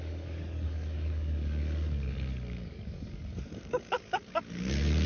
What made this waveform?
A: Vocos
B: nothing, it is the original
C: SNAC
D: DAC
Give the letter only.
D